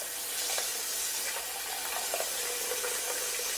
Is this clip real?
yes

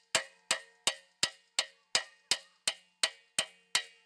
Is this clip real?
yes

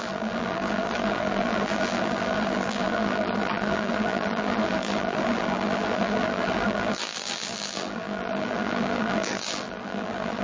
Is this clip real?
no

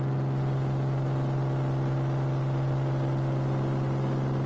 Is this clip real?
yes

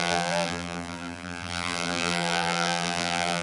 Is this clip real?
no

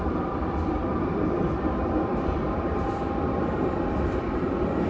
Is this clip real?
no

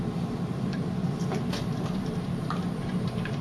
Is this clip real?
no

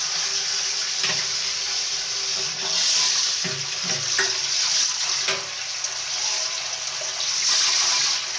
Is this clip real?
yes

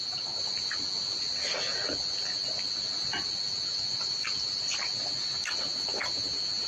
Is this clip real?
yes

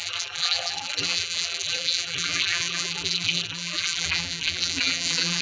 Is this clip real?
no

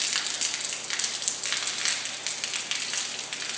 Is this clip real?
yes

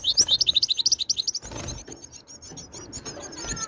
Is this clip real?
yes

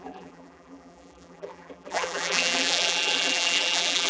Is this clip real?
no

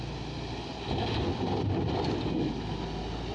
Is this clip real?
yes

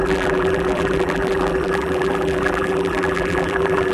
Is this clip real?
no